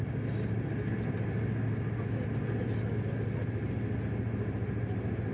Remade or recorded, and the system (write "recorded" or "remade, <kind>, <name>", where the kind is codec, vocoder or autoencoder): recorded